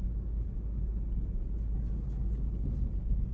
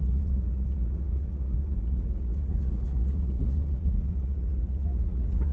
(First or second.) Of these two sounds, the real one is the first